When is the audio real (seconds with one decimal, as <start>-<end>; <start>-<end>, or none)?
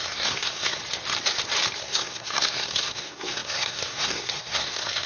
0.8-1.8